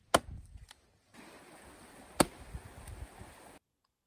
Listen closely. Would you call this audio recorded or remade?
recorded